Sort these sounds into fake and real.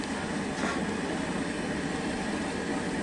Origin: real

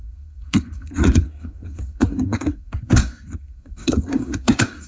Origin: fake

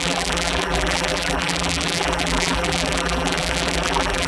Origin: fake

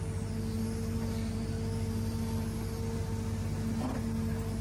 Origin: real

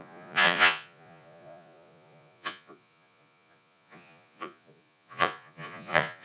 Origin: fake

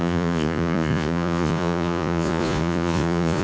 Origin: fake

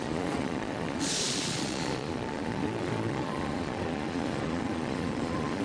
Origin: fake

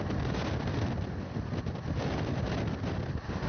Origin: real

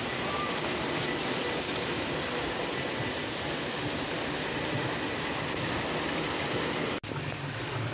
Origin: real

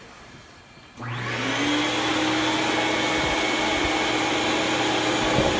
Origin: real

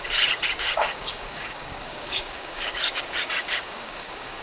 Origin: fake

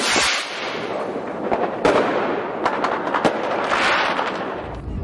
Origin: fake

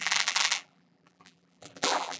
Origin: fake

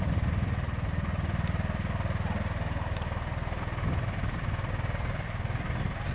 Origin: real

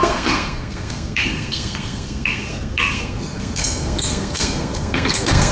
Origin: fake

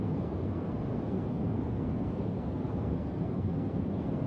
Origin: fake